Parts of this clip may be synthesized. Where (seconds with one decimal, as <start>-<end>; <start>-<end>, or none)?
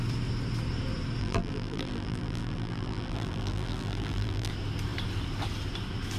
1.2-4.5